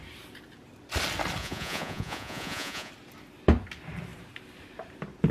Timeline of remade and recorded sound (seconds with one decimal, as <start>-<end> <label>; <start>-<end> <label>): 0.0-1.4 recorded; 1.4-2.9 remade; 2.9-5.3 recorded